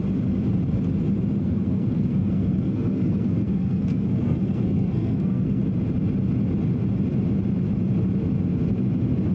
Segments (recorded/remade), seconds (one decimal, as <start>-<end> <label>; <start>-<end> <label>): 0.0-1.4 recorded; 1.4-5.6 remade; 5.6-9.3 recorded